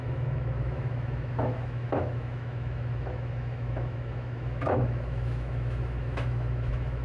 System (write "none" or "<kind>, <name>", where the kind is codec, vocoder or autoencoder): autoencoder, DAC-VAE